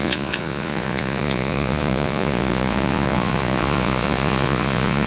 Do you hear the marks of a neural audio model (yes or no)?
yes